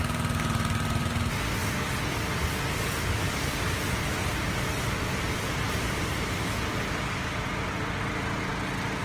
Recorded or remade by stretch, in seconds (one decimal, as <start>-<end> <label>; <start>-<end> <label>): 0.0-9.0 recorded